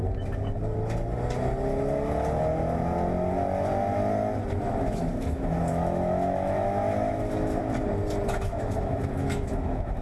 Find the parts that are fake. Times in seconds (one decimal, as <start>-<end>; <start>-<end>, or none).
4.6-7.6; 8.4-10.0